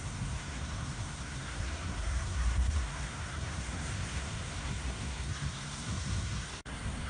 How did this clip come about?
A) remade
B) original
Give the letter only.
A